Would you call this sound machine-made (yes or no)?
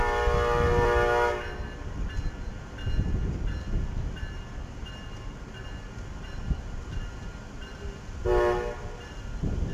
no